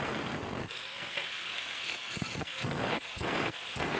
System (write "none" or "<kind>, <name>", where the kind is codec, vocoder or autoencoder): codec, SNAC